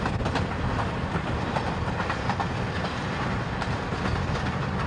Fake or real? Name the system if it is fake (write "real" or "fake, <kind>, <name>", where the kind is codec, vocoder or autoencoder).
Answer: real